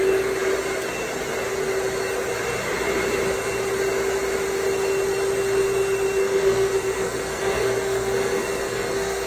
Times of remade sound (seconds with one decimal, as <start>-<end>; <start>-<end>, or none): 6.2-9.3